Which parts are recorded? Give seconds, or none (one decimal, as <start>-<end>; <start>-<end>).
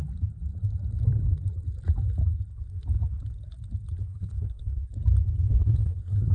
0.0-4.0; 4.9-5.5